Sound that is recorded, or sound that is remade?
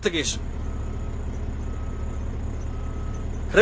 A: recorded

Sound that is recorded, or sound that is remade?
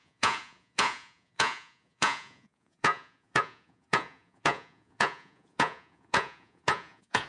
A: remade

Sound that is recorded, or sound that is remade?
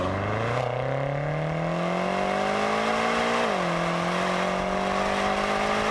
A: recorded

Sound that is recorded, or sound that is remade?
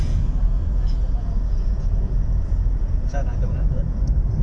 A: remade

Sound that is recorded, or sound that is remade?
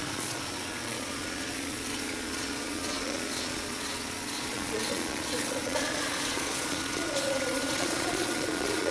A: remade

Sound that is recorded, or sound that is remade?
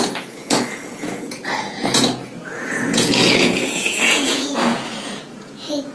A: remade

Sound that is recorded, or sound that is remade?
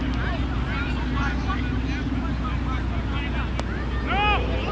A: recorded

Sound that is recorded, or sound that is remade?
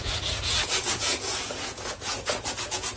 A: remade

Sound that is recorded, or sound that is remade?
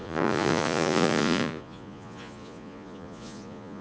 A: remade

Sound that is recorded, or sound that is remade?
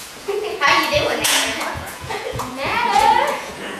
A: remade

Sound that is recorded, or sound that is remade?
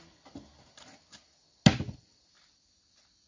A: recorded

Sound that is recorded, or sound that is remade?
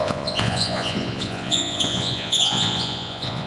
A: remade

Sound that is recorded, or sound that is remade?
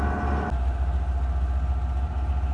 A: recorded